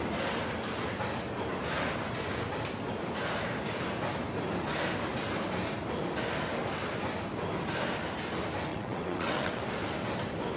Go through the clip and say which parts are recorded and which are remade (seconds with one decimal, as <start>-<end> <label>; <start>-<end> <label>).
0.0-8.7 recorded; 8.7-9.6 remade; 9.6-10.6 recorded